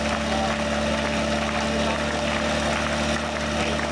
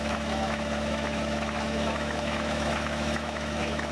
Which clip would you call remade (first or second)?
second